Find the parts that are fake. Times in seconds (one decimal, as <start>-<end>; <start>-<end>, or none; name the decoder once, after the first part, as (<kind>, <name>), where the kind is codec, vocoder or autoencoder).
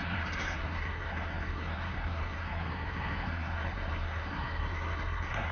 0.0-5.5 (codec, SNAC)